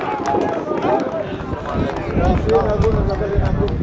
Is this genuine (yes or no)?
yes